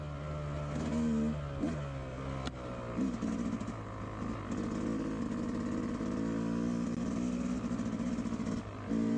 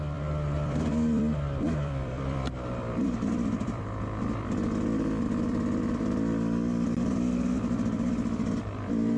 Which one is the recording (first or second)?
first